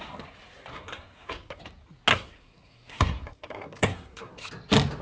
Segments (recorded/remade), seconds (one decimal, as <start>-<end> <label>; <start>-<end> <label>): 0.0-0.7 recorded; 0.7-1.6 remade; 1.6-2.1 recorded; 2.1-4.5 remade; 4.5-5.0 recorded